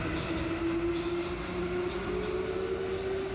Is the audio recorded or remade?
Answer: recorded